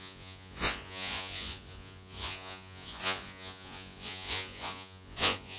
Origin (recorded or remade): remade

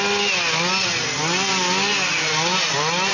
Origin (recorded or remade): recorded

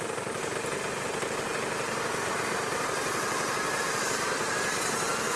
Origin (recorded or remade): recorded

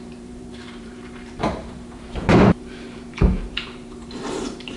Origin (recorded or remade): remade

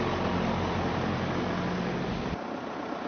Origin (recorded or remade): recorded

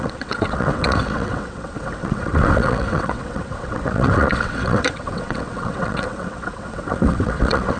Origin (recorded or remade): remade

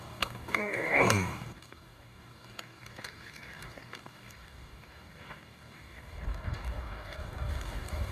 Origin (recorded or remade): remade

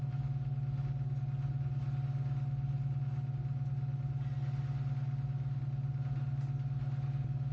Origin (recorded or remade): recorded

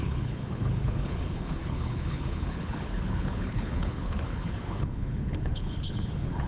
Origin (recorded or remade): remade